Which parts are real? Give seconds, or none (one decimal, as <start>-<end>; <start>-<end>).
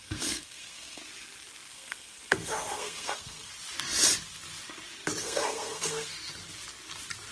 1.0-1.7; 3.5-5.2; 6.1-7.3